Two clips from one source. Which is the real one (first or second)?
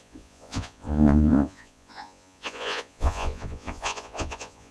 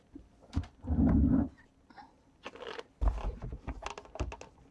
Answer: second